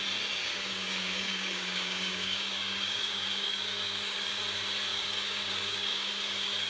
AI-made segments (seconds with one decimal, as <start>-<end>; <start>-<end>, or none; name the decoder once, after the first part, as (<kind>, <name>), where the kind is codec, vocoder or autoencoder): 0.4-4.4 (codec, DAC); 4.9-6.7